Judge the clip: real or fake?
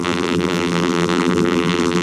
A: fake